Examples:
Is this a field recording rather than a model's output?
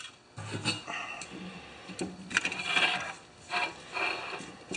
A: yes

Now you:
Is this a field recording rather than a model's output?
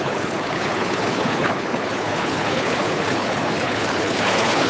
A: no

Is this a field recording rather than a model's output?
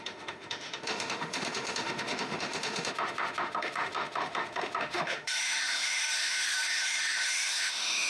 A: no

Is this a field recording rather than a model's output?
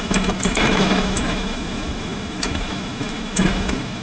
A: no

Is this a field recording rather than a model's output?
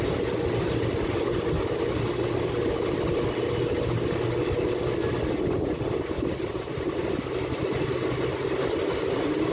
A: yes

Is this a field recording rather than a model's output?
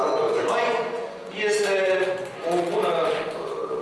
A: no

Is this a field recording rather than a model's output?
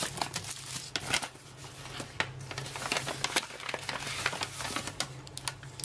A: yes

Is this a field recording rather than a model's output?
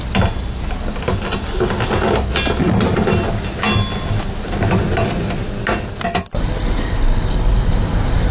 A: yes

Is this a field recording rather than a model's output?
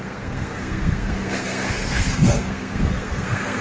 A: no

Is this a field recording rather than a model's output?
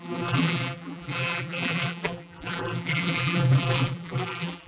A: no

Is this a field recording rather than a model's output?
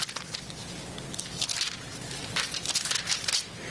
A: yes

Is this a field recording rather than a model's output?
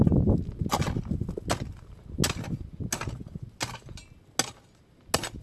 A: yes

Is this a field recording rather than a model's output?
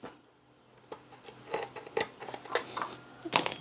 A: yes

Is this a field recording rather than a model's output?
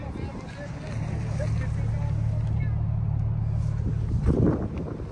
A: yes